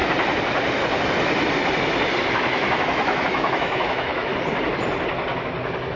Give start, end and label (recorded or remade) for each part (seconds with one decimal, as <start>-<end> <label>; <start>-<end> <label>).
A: 0.0-2.3 recorded; 2.3-4.3 remade; 4.3-6.0 recorded